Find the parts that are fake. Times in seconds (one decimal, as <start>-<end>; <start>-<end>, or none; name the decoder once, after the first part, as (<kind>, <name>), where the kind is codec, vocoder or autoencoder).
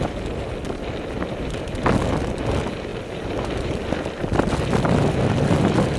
none